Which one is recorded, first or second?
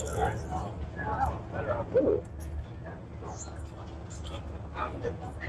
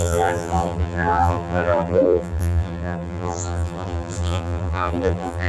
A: first